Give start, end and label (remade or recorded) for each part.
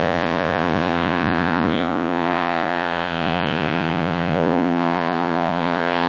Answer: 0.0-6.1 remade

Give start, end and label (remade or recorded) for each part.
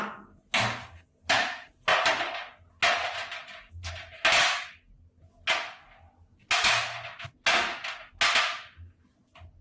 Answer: 0.0-9.6 recorded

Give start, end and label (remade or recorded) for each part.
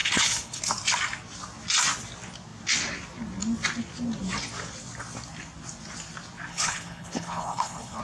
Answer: 0.0-0.6 remade; 0.6-6.5 recorded; 6.5-8.0 remade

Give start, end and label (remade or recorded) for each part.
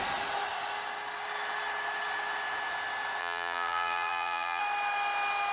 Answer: 0.0-3.2 recorded; 3.2-4.6 remade; 4.6-5.5 recorded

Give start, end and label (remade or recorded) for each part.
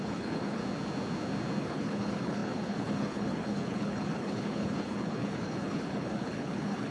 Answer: 0.0-0.6 remade; 0.6-1.6 recorded; 1.6-6.9 remade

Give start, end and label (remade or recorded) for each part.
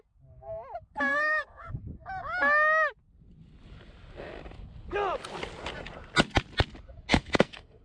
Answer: 0.0-1.1 recorded; 1.1-1.7 remade; 1.7-7.1 recorded; 7.1-7.8 remade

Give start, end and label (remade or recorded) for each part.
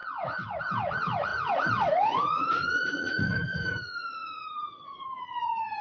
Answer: 0.0-5.8 remade